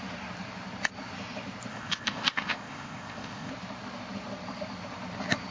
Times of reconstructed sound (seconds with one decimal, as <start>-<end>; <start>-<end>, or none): 1.7-3.5